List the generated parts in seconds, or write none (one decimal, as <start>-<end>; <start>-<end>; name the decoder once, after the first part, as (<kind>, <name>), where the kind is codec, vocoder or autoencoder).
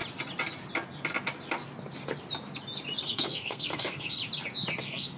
3.1-4.2 (codec, SNAC); 4.8-5.2